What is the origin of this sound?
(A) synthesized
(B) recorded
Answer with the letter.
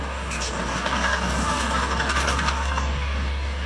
A